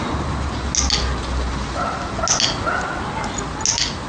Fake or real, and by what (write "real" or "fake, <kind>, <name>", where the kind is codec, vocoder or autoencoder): real